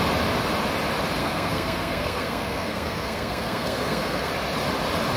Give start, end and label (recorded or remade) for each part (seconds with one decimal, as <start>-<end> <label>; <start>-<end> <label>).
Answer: 0.0-1.2 recorded; 1.2-4.3 remade; 4.3-5.2 recorded